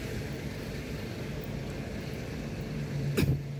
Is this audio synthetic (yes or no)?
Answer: no